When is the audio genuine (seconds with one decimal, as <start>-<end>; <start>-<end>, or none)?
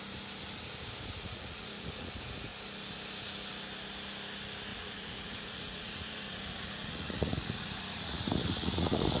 0.0-1.2; 2.1-4.7